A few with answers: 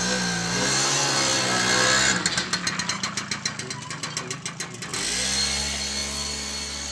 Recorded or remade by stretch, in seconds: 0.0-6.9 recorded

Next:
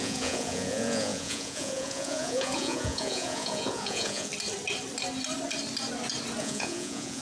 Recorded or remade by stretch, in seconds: 0.0-4.3 remade; 4.3-6.4 recorded; 6.4-7.2 remade

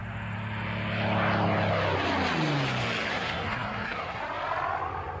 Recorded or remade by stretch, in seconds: 0.0-3.1 recorded; 3.1-4.2 remade; 4.2-5.2 recorded

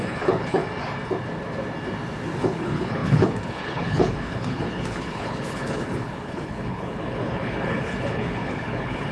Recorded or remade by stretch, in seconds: 0.0-0.6 remade; 0.6-2.4 recorded; 2.4-9.1 remade

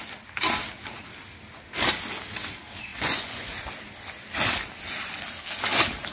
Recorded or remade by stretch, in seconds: 0.0-2.9 recorded; 2.9-3.5 remade; 3.5-6.1 recorded

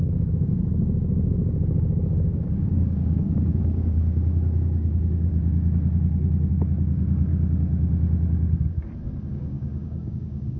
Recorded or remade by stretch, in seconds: 0.0-5.3 remade; 5.3-6.5 recorded; 6.5-7.3 remade; 7.3-9.3 recorded; 9.3-10.6 remade

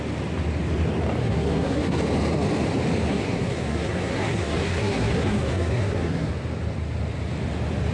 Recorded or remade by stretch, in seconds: 0.0-1.2 recorded; 1.2-2.0 remade; 2.0-3.1 recorded; 3.1-6.3 remade; 6.3-7.9 recorded

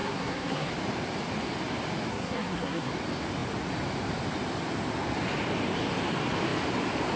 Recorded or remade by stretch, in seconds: 0.0-0.7 remade; 0.7-2.1 recorded; 2.1-2.9 remade; 2.9-7.2 recorded